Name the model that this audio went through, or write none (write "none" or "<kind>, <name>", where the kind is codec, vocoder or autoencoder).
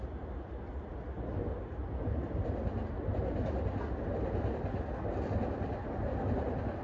none